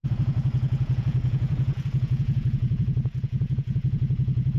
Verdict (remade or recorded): remade